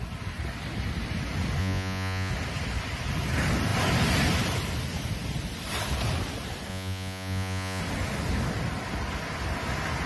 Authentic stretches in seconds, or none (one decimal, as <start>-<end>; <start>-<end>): 0.0-1.6; 2.3-6.7; 7.8-10.1

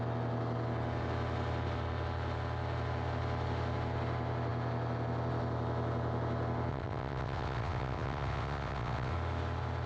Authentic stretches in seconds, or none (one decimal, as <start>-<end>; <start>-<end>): 0.0-6.7; 9.1-9.9

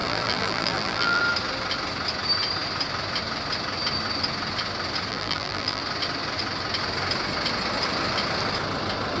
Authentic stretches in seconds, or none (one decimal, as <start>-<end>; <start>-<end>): 1.2-5.1; 5.8-9.2

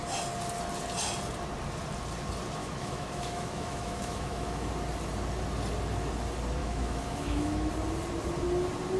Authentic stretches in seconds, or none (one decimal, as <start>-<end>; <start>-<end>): 0.0-2.6; 4.7-6.6; 7.7-9.0

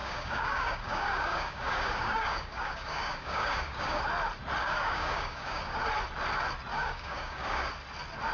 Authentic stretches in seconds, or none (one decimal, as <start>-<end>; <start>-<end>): 4.0-4.6; 5.8-6.7; 7.7-8.3